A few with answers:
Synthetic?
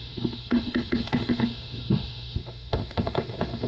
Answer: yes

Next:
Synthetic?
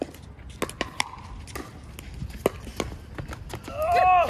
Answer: no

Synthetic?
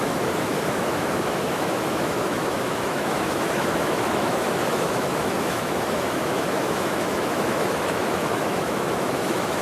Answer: yes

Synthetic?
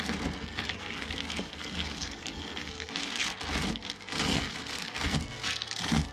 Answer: yes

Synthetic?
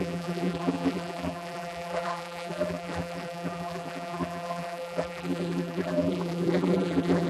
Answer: yes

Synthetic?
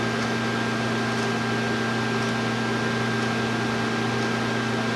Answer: no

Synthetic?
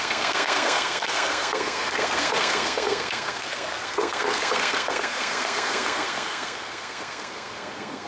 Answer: yes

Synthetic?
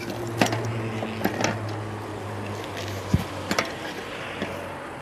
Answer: no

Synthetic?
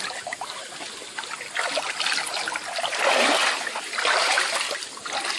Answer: no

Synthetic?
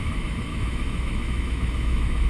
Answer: yes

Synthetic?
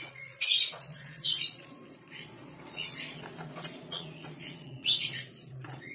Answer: yes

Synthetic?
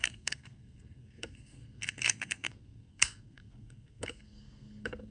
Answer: yes